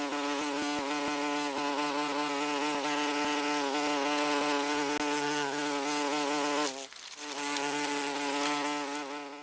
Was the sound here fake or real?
real